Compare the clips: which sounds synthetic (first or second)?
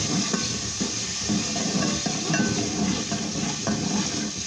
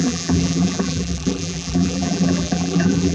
second